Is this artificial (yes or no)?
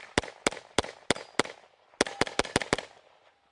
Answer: no